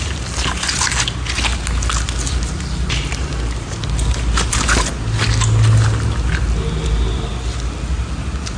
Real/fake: real